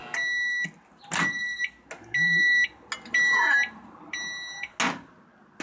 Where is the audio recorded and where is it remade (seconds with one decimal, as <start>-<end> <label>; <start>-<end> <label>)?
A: 0.0-5.6 recorded